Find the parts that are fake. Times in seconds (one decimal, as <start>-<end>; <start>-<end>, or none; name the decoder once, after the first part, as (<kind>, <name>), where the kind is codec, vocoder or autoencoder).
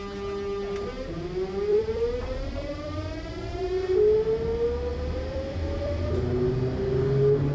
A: 1.7-3.7 (vocoder, BigVGAN v2); 4.9-6.1